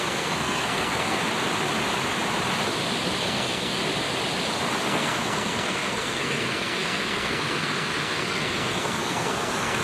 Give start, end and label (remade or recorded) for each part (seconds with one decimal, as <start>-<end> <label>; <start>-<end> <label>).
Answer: 0.0-1.2 remade; 1.2-3.2 recorded; 3.2-3.8 remade; 3.8-4.8 recorded; 4.8-9.8 remade